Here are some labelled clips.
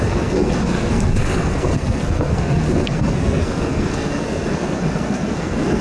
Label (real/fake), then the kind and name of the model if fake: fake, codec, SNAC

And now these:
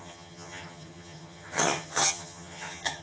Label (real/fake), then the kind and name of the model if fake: fake, vocoder, HiFi-GAN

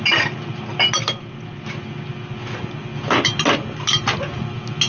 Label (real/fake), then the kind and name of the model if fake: real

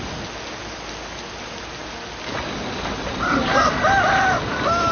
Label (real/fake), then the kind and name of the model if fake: real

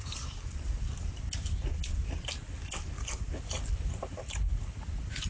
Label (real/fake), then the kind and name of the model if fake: real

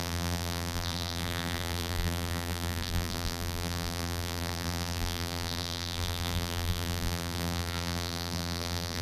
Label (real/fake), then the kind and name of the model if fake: fake, vocoder, BigVGAN v2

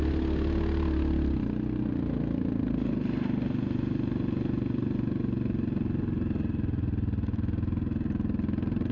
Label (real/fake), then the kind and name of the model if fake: real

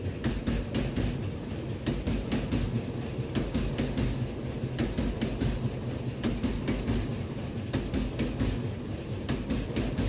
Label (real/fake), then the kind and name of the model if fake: real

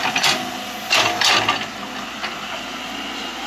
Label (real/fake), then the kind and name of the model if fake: real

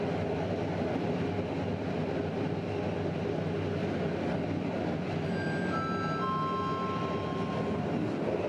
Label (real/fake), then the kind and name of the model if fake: real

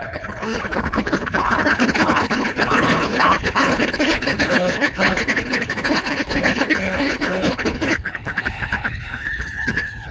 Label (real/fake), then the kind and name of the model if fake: fake, codec, HILCodec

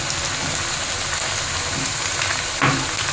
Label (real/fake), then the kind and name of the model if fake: real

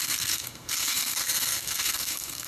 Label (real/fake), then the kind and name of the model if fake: fake, codec, SNAC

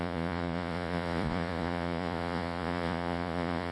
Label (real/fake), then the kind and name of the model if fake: fake, vocoder, Vocos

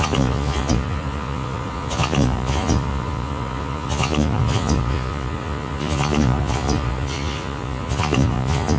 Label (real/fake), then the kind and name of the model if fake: fake, vocoder, Vocos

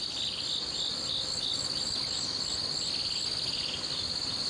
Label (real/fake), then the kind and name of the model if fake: real